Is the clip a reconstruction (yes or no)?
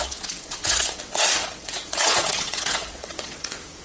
yes